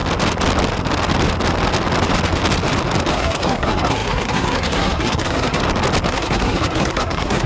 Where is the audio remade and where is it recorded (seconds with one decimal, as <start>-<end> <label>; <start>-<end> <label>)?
0.0-3.1 recorded; 3.1-5.6 remade; 5.6-6.1 recorded; 6.1-7.5 remade